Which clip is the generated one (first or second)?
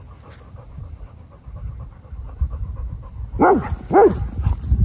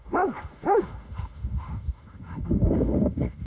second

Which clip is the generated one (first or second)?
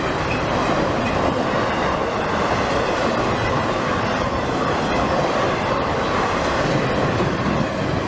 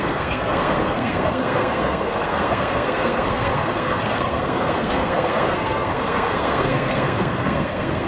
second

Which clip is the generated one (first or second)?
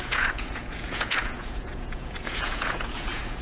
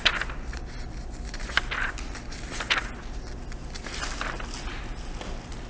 first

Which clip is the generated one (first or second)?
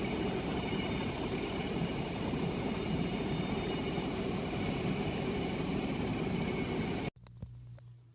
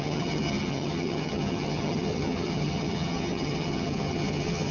second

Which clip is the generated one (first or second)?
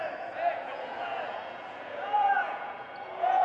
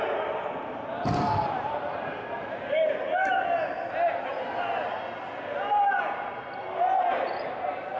first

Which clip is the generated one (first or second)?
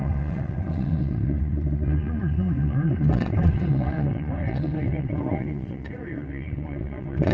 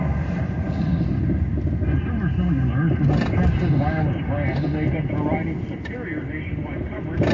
first